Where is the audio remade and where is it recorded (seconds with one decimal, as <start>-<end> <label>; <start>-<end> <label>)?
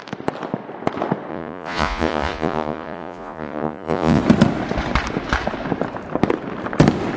0.0-1.3 recorded; 1.3-4.2 remade; 4.2-7.2 recorded